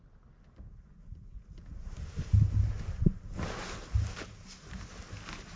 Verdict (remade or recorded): recorded